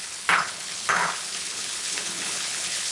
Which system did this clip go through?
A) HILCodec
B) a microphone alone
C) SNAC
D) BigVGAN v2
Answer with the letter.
A